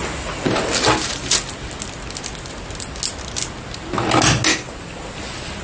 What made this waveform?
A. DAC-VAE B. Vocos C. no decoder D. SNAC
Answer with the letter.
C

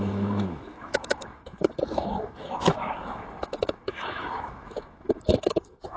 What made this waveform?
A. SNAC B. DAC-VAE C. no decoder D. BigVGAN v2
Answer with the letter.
B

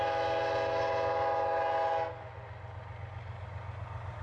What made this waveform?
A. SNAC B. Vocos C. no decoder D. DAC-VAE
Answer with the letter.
C